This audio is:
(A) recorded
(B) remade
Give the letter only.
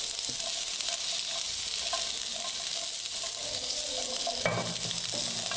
A